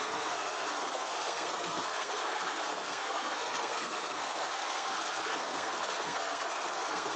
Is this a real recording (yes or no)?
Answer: no